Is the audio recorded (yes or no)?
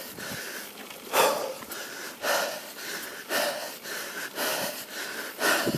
yes